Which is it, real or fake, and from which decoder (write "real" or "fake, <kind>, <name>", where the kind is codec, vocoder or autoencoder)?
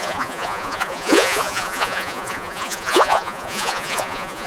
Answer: fake, vocoder, Vocos